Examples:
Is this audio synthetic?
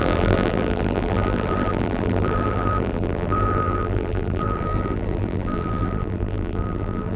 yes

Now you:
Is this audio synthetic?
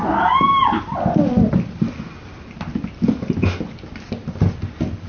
no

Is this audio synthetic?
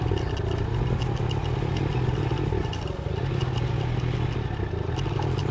no